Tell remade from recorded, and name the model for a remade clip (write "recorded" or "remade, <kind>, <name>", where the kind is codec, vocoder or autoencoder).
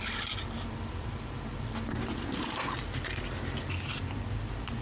remade, vocoder, BigVGAN v2